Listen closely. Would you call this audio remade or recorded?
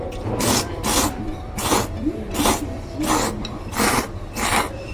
remade